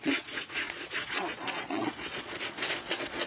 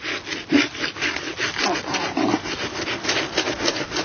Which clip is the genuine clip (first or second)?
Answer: second